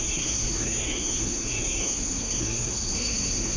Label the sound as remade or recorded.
remade